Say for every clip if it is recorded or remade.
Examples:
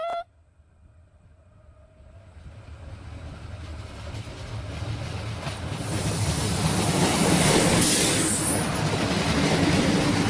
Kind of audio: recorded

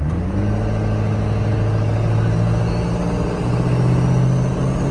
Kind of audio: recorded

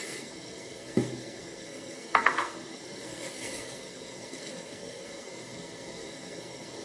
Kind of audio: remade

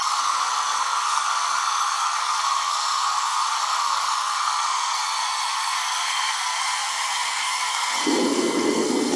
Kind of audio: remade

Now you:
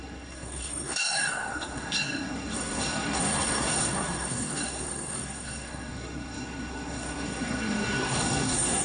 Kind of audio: remade